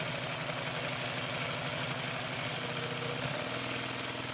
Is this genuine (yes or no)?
yes